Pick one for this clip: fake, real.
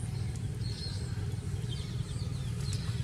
real